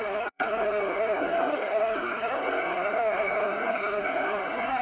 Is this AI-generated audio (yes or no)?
yes